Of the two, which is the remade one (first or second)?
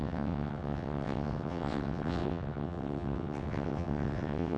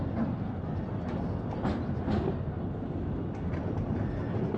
first